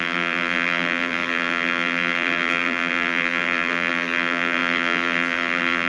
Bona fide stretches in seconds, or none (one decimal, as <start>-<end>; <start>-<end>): none